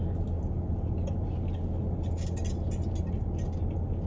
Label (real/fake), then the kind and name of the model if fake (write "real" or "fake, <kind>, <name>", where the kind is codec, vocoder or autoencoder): real